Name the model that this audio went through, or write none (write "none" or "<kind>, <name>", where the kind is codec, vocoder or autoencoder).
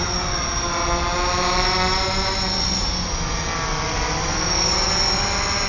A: none